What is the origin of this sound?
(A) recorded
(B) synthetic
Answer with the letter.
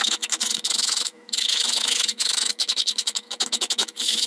B